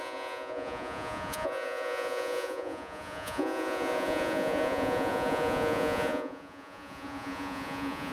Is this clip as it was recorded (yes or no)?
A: no